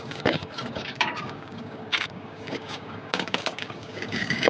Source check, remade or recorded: remade